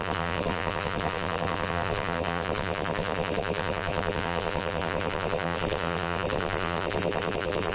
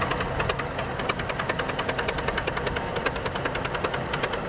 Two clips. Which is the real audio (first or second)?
second